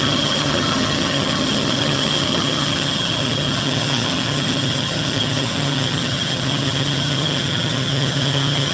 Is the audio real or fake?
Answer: fake